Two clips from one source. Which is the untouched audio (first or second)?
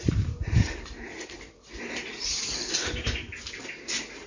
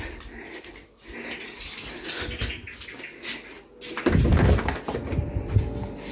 second